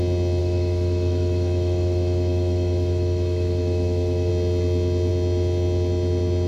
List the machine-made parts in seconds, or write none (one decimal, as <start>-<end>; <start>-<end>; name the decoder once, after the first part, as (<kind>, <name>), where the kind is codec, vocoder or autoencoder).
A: 0.4-4.3 (autoencoder, DAC-VAE)